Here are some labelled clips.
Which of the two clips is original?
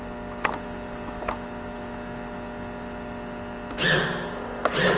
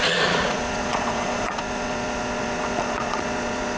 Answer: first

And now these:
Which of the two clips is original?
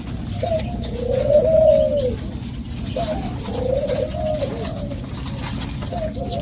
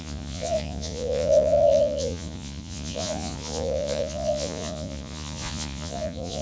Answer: first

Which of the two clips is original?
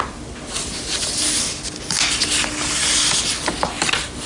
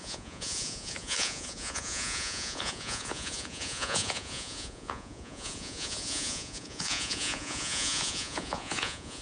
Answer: first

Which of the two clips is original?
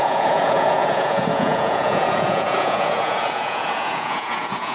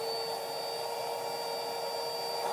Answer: second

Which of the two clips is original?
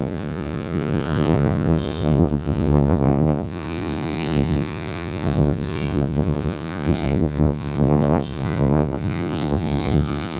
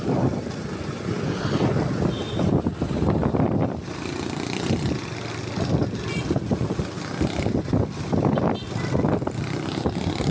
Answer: second